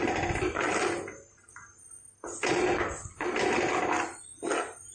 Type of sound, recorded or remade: recorded